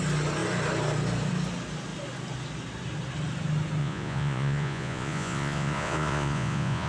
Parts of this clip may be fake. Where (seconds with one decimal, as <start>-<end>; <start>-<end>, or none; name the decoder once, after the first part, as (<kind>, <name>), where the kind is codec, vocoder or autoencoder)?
3.8-6.9 (vocoder, Vocos)